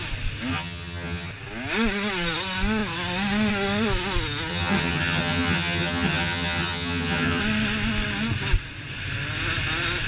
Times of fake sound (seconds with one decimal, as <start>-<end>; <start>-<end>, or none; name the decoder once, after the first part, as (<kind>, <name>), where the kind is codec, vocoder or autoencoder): 0.5-1.3 (vocoder, HiFi-GAN); 4.5-7.4